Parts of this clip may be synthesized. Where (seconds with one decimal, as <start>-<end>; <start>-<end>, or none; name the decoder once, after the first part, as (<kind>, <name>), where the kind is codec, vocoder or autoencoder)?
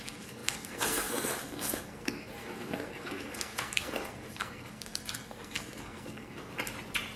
0.0-6.5 (codec, SNAC)